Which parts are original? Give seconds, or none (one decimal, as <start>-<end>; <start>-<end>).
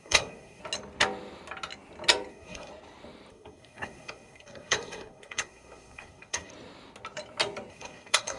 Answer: 0.6-2.3; 2.7-3.3; 6.5-7.7